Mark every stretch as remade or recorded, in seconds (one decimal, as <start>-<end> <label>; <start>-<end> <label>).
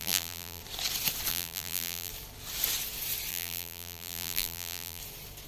0.0-0.6 remade; 0.6-1.3 recorded; 1.3-2.1 remade; 2.1-3.3 recorded; 3.3-5.0 remade; 5.0-5.5 recorded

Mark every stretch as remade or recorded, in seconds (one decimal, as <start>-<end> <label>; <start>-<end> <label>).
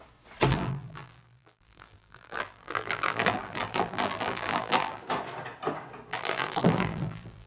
0.0-0.5 recorded; 0.5-5.0 remade; 5.0-6.1 recorded; 6.1-7.5 remade